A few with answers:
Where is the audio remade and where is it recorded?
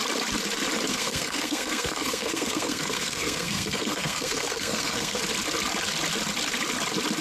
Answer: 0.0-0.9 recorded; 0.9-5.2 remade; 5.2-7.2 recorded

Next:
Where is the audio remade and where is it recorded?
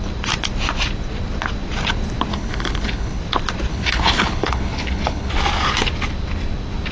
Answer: 0.0-2.3 recorded; 2.3-3.2 remade; 3.2-3.7 recorded; 3.7-5.3 remade; 5.3-6.9 recorded